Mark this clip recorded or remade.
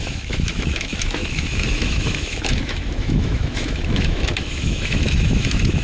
remade